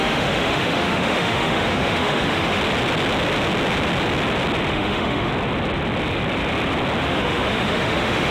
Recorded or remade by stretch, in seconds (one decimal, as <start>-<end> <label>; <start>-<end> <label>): 0.0-2.6 remade; 2.6-4.7 recorded; 4.7-5.3 remade; 5.3-7.0 recorded; 7.0-8.3 remade